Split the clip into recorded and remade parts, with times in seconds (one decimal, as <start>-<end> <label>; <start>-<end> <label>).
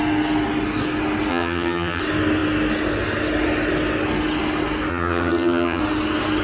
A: 0.0-1.3 recorded; 1.3-2.0 remade; 2.0-4.9 recorded; 4.9-5.8 remade; 5.8-6.4 recorded